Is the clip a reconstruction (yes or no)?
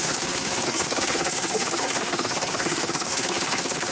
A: yes